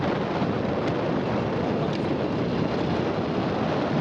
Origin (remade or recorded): recorded